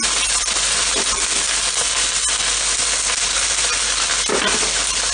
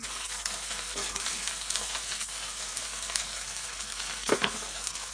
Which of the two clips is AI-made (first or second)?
second